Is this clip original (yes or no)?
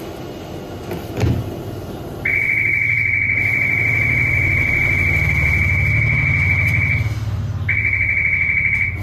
yes